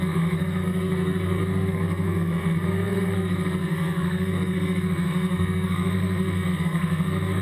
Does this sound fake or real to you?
fake